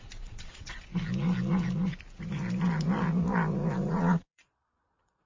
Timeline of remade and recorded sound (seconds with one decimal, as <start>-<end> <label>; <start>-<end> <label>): 0.0-0.9 remade; 0.9-3.9 recorded; 3.9-5.3 remade

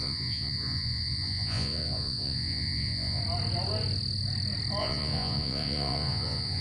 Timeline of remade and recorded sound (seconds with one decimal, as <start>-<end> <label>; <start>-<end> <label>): 0.0-3.2 remade; 3.2-4.8 recorded; 4.8-6.6 remade

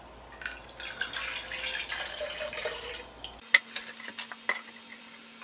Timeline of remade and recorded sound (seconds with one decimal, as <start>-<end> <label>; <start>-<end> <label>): 0.0-5.4 recorded